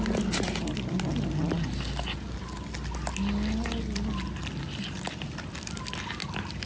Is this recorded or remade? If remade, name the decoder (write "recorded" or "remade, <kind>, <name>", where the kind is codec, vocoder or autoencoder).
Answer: recorded